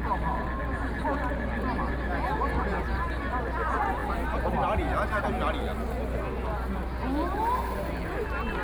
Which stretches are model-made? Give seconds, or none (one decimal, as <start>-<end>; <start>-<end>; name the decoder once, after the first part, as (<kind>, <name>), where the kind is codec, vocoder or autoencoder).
none

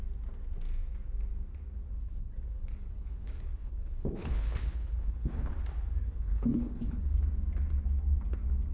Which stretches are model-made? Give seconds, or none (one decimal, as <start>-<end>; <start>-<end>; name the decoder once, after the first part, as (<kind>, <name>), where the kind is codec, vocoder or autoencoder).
2.0-5.5 (codec, HILCodec); 6.0-7.1

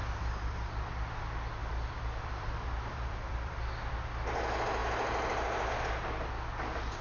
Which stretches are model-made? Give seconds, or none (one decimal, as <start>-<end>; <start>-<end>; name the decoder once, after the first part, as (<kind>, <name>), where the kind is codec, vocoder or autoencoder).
0.0-1.1 (vocoder, BigVGAN v2); 1.6-4.1